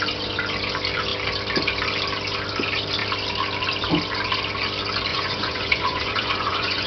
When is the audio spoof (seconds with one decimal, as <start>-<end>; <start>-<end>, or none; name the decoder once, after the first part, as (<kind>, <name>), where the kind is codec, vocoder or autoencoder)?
5.1-6.9 (vocoder, Vocos)